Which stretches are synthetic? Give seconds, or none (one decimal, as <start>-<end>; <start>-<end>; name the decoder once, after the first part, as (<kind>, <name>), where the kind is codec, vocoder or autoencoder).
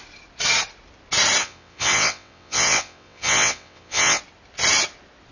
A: 1.4-4.2 (vocoder, WaveNeXt)